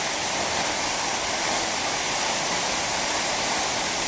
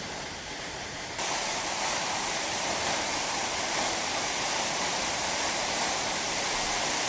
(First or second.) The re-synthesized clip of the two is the second